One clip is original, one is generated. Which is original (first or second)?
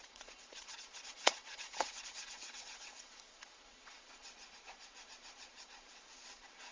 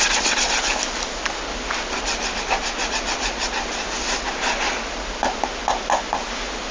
second